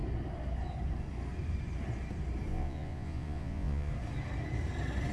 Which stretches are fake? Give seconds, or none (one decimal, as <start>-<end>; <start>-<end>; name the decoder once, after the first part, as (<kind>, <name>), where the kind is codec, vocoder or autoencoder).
2.5-3.9 (vocoder, Vocos)